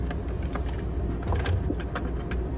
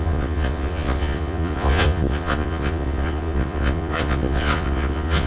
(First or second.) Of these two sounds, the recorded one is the first